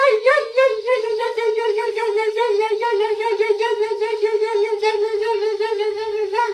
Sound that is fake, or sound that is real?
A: fake